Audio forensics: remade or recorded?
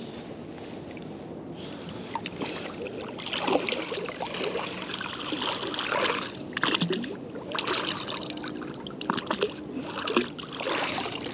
recorded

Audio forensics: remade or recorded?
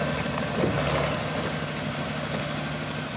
recorded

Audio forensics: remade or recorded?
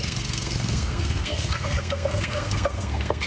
remade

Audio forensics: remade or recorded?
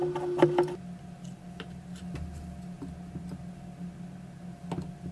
recorded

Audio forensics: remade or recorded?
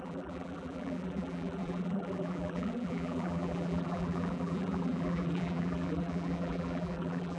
remade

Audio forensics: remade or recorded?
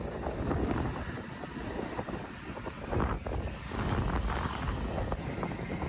recorded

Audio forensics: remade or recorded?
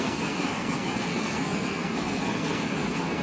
remade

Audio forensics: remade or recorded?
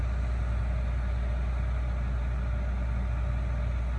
recorded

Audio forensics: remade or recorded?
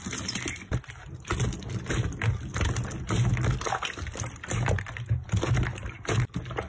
recorded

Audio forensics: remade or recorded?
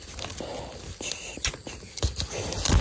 recorded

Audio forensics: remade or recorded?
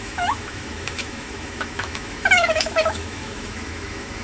remade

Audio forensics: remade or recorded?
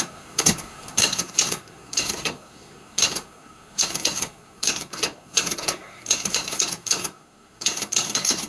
remade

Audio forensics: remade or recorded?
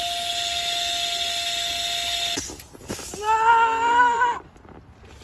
recorded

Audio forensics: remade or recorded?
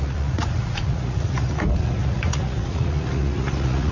remade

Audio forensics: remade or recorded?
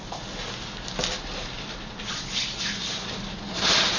recorded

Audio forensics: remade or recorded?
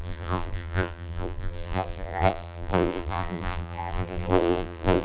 remade